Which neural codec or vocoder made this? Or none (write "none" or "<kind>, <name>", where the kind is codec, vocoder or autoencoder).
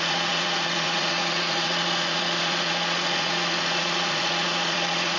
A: vocoder, Vocos